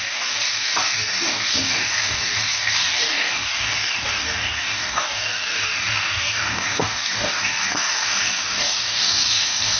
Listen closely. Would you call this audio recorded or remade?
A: remade